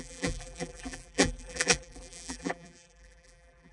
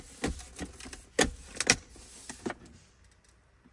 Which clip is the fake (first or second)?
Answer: first